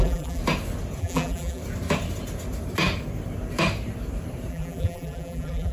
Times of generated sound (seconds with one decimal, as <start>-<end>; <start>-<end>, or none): 0.0-0.4; 1.0-1.6; 4.5-5.7